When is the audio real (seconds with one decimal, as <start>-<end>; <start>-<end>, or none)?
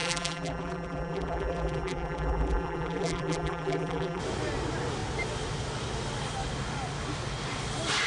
4.2-8.1